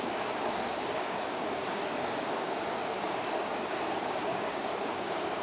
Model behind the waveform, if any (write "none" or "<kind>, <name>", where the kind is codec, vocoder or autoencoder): codec, DAC